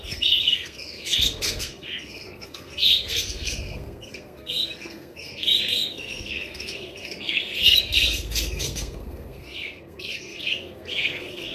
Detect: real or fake fake